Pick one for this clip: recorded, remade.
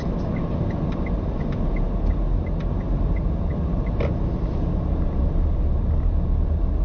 recorded